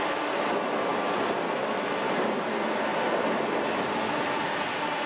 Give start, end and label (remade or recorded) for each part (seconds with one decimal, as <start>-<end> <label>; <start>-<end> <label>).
0.0-5.1 recorded